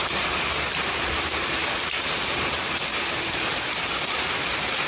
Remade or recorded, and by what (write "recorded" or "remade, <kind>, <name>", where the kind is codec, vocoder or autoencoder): remade, vocoder, BigVGAN v2